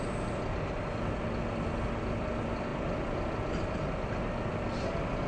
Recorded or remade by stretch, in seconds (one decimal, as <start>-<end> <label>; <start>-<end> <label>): 0.0-5.3 recorded